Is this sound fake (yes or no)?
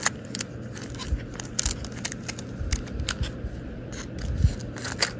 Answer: no